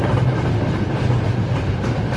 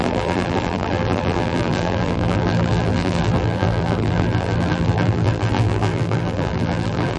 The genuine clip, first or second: first